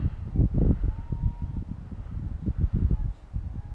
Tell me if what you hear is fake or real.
real